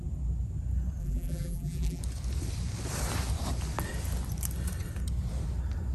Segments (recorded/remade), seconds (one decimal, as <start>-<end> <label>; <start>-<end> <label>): 0.0-1.0 recorded; 1.0-2.0 remade; 2.0-5.9 recorded

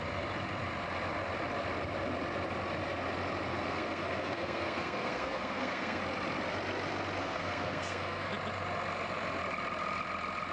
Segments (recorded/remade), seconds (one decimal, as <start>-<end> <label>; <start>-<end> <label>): 0.0-3.5 recorded; 3.5-6.0 remade; 6.0-7.2 recorded; 7.2-8.3 remade; 8.3-10.5 recorded

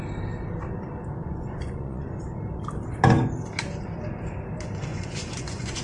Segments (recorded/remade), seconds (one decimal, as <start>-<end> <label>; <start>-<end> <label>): 0.0-1.2 recorded; 1.2-2.2 remade; 2.2-4.9 recorded; 4.9-5.8 remade

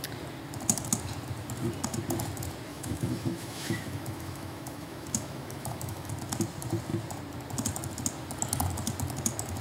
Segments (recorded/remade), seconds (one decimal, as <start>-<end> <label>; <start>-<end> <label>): 0.0-2.7 recorded; 2.7-6.1 remade; 6.1-9.6 recorded

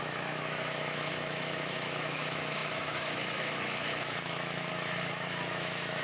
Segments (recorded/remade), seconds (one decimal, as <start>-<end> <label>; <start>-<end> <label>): 0.0-6.0 remade

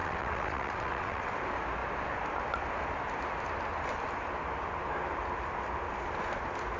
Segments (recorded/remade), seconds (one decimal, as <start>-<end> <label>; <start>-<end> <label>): 0.0-1.3 remade; 1.3-6.8 recorded

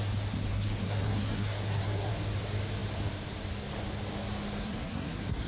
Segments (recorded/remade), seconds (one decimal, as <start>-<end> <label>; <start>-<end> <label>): 0.0-0.5 recorded; 0.5-2.1 remade; 2.1-4.6 recorded; 4.6-5.5 remade

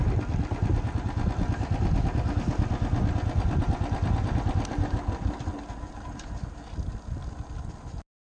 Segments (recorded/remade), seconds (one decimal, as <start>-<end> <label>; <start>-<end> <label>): 0.0-8.4 recorded